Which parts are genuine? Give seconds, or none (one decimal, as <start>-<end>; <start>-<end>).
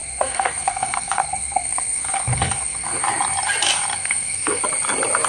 3.0-3.9; 4.6-5.3